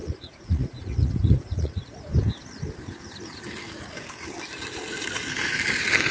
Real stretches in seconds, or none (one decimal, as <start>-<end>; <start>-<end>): 2.1-6.1